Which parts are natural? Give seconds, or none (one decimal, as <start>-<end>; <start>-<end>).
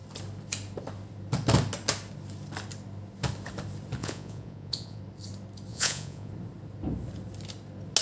0.0-4.0; 5.0-5.7; 6.3-8.0